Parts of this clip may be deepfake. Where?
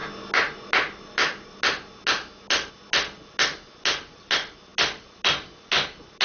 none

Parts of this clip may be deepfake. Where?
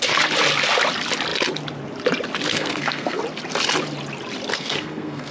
2.5-3.2; 4.5-5.3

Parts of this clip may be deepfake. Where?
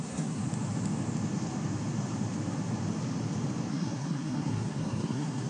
0.0-0.4; 3.7-5.5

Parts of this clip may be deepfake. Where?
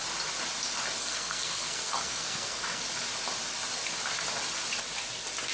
1.0-2.8